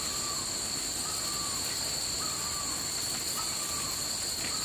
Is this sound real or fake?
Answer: real